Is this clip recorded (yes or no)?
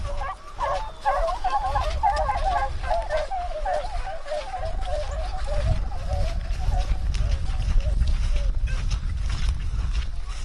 yes